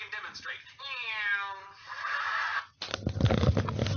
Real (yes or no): yes